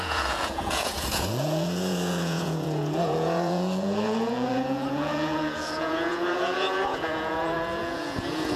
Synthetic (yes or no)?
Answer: yes